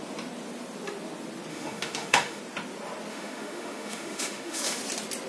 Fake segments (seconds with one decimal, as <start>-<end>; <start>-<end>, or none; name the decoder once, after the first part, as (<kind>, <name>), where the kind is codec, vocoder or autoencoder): 1.5-2.4 (autoencoder, DAC-VAE); 3.1-4.8